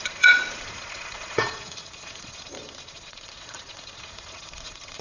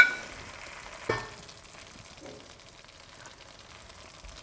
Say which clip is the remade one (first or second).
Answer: first